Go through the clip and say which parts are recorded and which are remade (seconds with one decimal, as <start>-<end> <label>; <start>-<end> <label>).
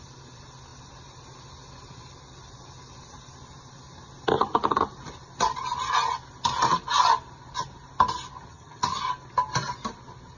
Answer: 0.0-8.5 recorded; 8.5-9.0 remade; 9.0-10.4 recorded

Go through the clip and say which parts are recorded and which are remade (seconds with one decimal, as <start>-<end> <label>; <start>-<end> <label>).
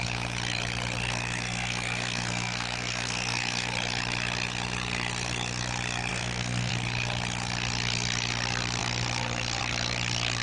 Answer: 0.0-1.0 recorded; 1.0-3.7 remade; 3.7-6.1 recorded; 6.1-6.7 remade; 6.7-10.4 recorded